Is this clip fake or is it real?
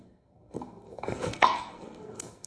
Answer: fake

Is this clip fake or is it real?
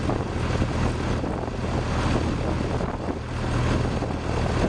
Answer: real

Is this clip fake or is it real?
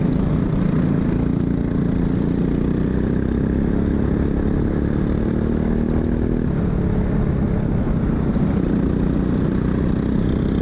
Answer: real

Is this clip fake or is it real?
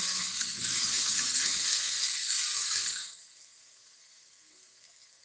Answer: fake